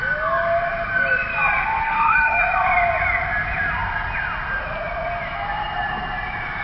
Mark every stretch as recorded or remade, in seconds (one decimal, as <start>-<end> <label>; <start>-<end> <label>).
0.0-1.8 recorded; 1.8-2.4 remade; 2.4-6.6 recorded